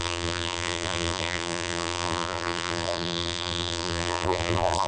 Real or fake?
fake